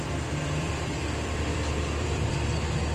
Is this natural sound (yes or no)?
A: no